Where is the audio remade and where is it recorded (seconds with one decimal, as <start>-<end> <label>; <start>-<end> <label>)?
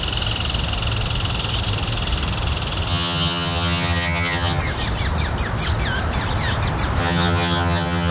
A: 0.0-2.9 recorded; 2.9-4.6 remade; 4.6-7.0 recorded; 7.0-8.1 remade